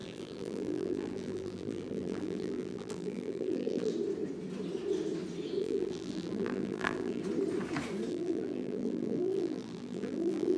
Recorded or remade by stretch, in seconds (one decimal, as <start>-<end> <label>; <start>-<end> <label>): 0.0-3.9 remade; 3.9-5.6 recorded; 5.6-7.2 remade; 7.2-8.1 recorded; 8.1-10.6 remade